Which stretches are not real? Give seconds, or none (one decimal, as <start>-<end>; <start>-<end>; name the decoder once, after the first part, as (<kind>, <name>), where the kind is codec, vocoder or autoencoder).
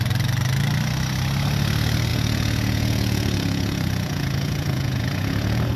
2.1-5.8 (vocoder, Vocos)